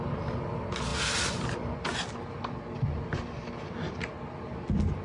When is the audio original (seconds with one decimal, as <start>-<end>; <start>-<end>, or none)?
0.0-5.0